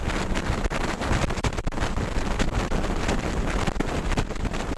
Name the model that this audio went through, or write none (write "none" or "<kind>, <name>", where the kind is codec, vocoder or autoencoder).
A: none